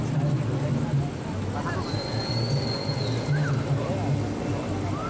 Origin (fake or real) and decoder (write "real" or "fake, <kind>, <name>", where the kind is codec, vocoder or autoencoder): real